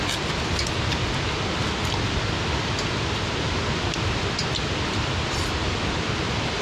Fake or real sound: real